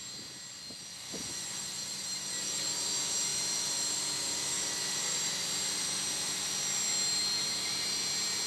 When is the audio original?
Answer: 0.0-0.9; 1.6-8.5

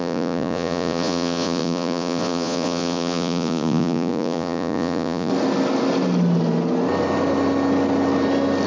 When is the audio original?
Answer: 5.3-8.7

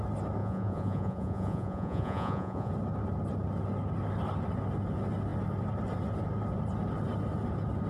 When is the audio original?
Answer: 0.0-0.4; 2.7-7.9

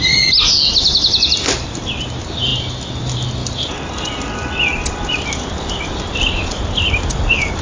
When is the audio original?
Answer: 0.0-7.6

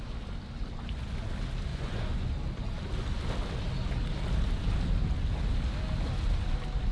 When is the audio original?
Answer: 0.0-1.7; 2.3-6.9

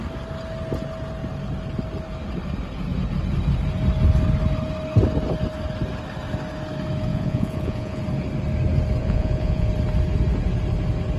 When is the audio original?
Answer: 0.0-7.1; 8.0-9.0; 9.7-11.2